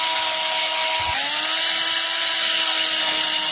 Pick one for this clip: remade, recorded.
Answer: recorded